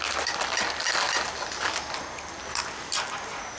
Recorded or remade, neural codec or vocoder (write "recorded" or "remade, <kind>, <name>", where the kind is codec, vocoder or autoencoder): recorded